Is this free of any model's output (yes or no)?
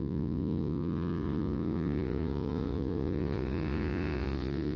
no